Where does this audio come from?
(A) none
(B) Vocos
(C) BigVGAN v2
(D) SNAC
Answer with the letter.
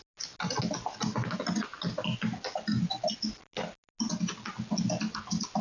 A